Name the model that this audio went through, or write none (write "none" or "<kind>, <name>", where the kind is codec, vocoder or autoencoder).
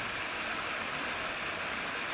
none